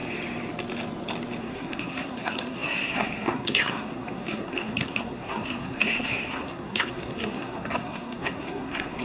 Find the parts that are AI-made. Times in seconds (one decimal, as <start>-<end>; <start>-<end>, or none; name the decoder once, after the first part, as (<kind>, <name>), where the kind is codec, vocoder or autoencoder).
1.4-9.0 (codec, SNAC)